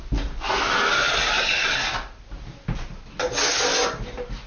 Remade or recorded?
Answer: recorded